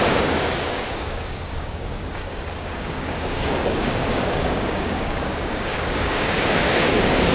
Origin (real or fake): fake